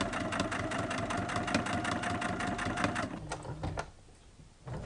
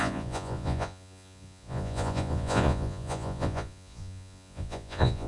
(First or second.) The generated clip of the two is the second